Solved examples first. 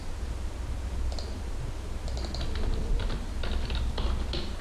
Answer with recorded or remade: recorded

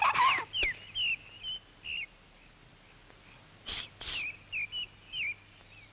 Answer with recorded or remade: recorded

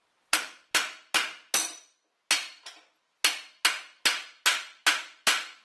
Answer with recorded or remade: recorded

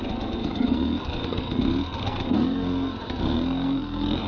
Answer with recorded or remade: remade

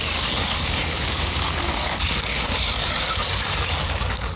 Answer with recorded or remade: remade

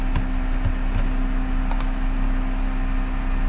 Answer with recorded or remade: recorded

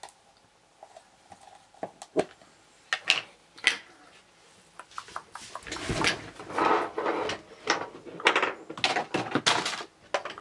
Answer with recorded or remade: recorded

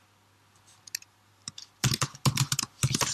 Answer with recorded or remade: recorded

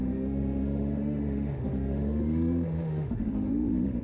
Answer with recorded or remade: remade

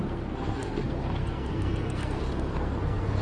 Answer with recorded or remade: remade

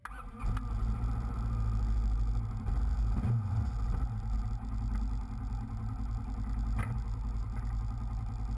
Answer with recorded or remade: recorded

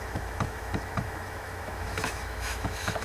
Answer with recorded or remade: remade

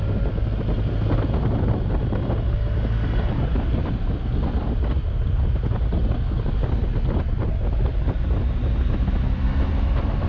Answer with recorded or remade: recorded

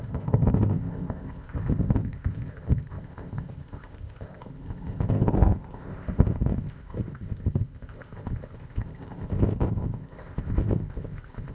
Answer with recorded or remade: remade